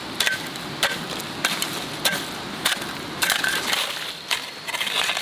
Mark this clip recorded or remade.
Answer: recorded